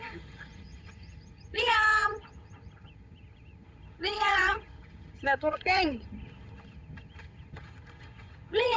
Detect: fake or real fake